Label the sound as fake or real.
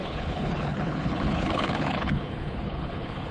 fake